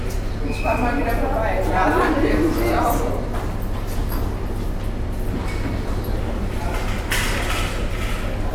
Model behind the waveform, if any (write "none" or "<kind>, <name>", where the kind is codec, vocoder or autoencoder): none